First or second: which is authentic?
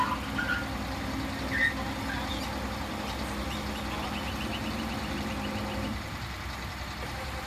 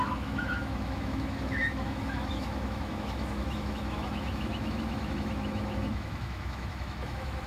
first